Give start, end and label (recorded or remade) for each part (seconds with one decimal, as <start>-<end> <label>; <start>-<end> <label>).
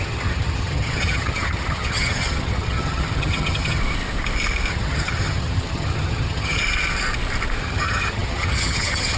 0.0-3.8 remade; 3.8-4.7 recorded; 4.7-6.6 remade; 6.6-7.6 recorded; 7.6-9.2 remade